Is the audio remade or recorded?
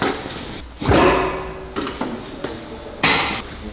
recorded